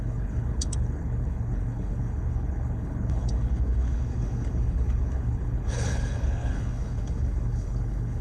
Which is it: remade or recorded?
remade